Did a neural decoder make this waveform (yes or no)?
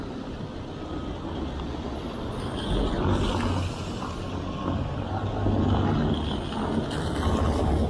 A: no